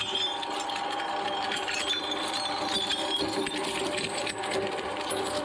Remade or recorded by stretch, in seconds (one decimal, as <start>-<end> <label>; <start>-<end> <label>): 0.0-5.4 recorded